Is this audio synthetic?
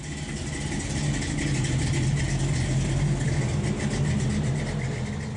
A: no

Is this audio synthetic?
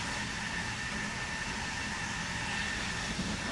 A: no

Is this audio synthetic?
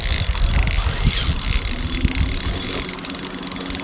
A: no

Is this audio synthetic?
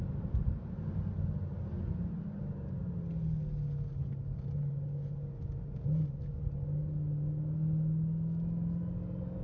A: no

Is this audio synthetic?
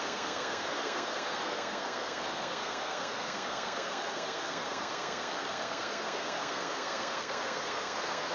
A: yes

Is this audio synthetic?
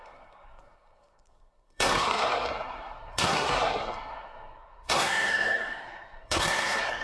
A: yes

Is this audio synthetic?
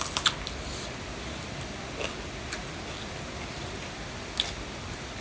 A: no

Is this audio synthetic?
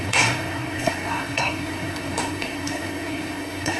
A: yes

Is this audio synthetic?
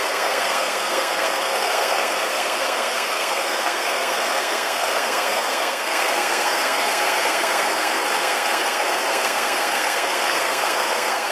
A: yes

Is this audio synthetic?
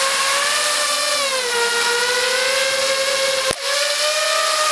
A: no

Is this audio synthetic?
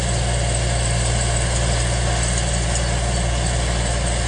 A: no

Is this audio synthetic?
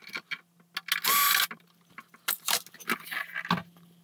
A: no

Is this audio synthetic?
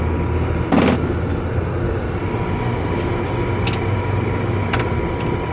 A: no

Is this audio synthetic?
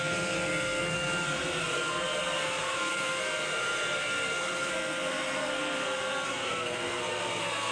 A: yes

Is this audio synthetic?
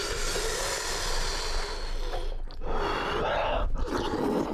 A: no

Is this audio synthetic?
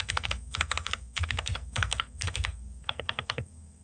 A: yes